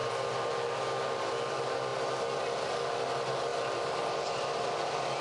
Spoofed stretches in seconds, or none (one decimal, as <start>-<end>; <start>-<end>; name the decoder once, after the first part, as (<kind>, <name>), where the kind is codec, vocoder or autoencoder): none